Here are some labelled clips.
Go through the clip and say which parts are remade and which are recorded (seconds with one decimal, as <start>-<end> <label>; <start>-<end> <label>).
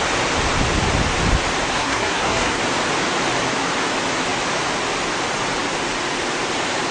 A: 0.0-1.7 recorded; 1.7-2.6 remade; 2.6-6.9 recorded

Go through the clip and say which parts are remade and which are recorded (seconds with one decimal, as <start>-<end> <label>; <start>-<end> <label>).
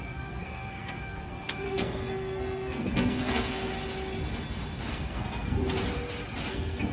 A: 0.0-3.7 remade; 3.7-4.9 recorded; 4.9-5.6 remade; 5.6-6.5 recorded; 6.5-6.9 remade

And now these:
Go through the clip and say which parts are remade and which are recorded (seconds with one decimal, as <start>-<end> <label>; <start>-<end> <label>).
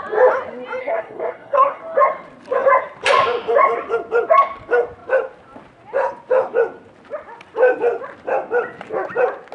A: 0.0-0.8 recorded; 0.8-1.8 remade; 1.8-9.5 recorded